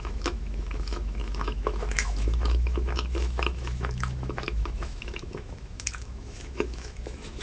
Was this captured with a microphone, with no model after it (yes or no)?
no